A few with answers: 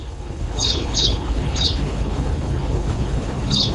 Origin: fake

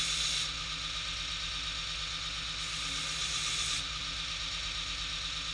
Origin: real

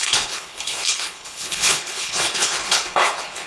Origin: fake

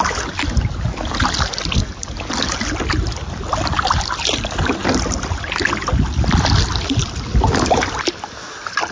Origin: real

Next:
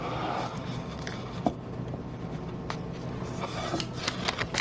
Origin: real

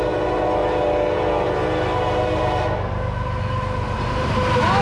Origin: real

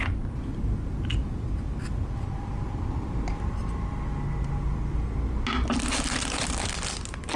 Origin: real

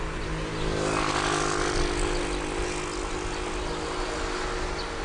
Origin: real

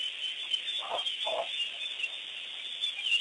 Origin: real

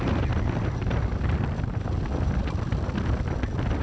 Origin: real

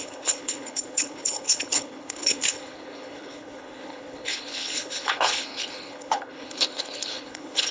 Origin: fake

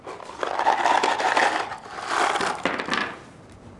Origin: real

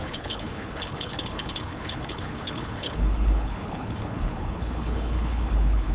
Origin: fake